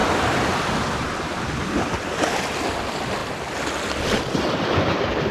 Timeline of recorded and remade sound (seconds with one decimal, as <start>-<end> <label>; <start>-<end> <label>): 0.0-2.1 remade; 2.1-5.3 recorded